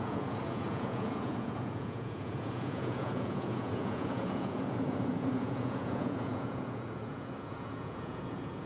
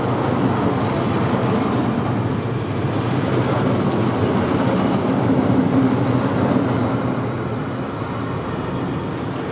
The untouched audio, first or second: second